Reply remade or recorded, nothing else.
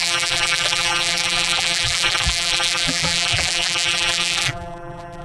remade